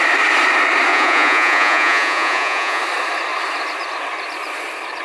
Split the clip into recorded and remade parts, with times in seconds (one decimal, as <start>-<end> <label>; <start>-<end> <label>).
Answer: 0.0-0.9 recorded; 0.9-2.8 remade; 2.8-5.0 recorded